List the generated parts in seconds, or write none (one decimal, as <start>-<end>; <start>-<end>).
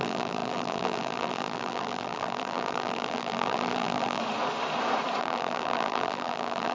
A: 0.0-4.2; 5.2-6.7